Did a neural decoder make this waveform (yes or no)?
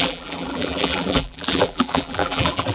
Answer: yes